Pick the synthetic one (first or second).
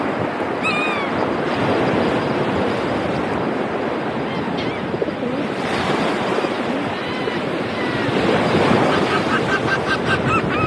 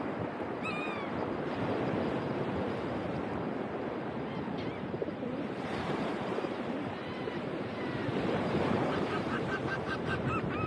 second